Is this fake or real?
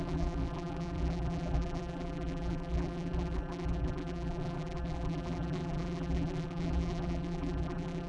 fake